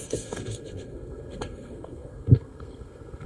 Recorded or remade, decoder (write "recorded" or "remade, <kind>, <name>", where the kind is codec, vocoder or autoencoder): remade, codec, SNAC